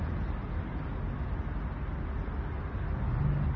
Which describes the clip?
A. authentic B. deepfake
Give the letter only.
A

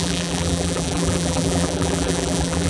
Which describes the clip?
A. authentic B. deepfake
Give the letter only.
B